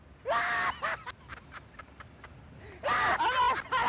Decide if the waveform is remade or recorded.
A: recorded